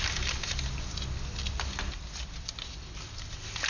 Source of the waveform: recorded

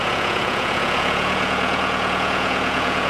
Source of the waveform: remade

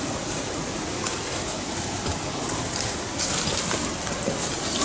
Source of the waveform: recorded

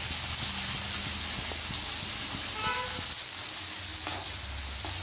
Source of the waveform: recorded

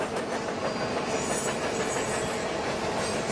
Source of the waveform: recorded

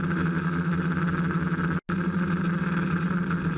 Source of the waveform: recorded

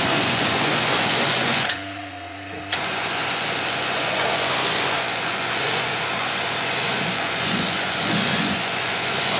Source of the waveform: remade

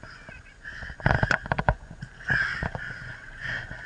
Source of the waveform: remade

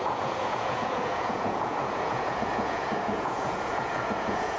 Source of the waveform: remade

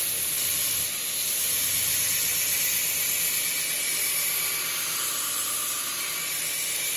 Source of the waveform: recorded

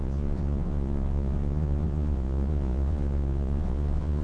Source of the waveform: remade